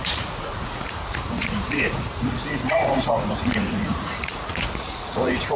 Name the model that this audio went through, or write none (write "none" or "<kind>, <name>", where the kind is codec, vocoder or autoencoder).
vocoder, Vocos